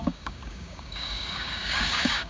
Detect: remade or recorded remade